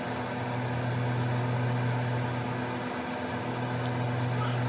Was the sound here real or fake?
real